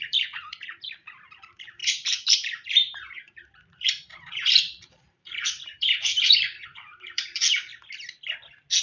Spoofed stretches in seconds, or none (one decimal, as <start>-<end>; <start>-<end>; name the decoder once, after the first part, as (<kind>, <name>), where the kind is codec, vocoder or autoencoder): 0.0-7.7 (vocoder, BigVGAN v2)